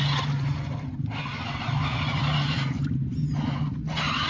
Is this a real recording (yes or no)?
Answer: yes